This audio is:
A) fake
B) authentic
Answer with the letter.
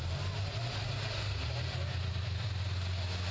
B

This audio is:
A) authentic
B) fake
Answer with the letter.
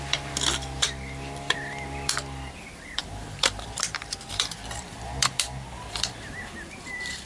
B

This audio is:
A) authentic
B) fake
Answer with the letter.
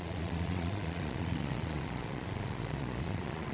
B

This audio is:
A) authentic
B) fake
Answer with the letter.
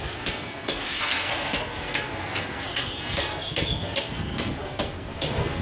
B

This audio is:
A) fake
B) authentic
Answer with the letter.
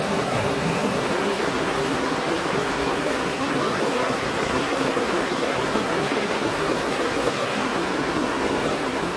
A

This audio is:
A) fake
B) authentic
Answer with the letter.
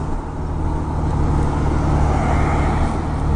B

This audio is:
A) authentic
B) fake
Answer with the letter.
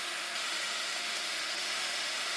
B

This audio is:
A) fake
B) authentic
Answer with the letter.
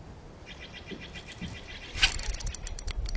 B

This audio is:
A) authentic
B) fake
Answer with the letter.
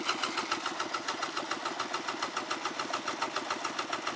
A